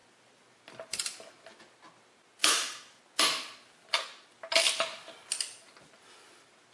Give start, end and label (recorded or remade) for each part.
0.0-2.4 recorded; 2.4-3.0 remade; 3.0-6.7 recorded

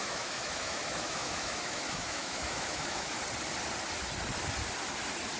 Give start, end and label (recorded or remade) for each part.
0.0-3.2 remade; 3.2-5.4 recorded

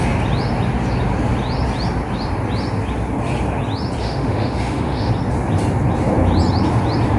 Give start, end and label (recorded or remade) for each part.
0.0-4.0 recorded; 4.0-5.1 remade; 5.1-7.2 recorded